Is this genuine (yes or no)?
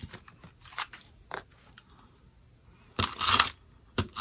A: yes